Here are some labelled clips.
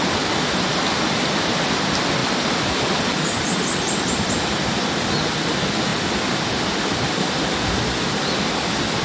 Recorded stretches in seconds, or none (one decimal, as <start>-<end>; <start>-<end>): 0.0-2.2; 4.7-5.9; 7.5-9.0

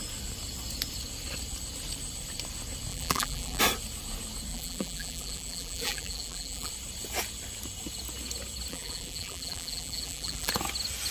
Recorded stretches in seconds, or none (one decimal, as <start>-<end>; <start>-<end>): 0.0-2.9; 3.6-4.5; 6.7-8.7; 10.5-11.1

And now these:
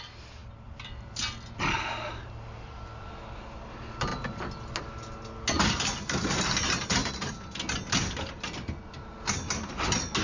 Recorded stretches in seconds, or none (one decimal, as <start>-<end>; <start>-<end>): 0.0-10.2